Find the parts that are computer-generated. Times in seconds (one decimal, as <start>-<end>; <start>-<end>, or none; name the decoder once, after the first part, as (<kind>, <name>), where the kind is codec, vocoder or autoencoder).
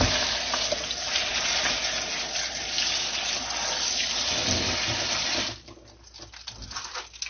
none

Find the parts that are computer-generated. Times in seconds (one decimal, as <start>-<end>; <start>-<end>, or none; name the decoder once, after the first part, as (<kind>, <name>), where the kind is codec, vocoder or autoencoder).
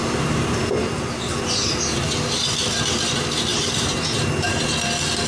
0.0-0.7 (vocoder, BigVGAN v2); 3.5-4.6